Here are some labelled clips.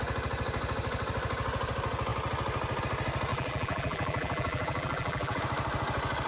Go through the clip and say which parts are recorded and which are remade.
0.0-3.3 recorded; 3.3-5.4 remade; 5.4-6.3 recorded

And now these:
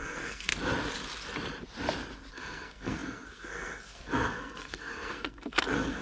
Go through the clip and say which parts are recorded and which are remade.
0.0-0.5 remade; 0.5-2.3 recorded; 2.3-6.0 remade

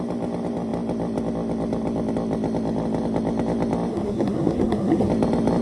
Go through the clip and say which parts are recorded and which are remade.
0.0-3.9 recorded; 3.9-5.1 remade; 5.1-5.6 recorded

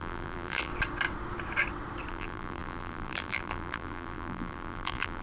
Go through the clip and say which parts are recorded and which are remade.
0.0-0.7 remade; 0.7-2.1 recorded; 2.1-5.2 remade

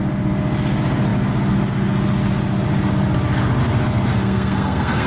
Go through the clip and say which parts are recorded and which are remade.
0.0-4.1 recorded; 4.1-5.1 remade

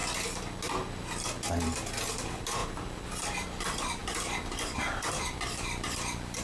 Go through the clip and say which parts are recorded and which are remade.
0.0-2.1 recorded; 2.1-2.6 remade; 2.6-3.6 recorded; 3.6-6.4 remade

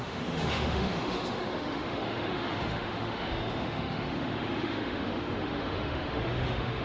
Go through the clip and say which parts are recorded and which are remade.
0.0-6.8 remade